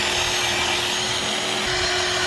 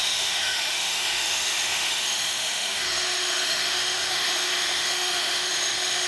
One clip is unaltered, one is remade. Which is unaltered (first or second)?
first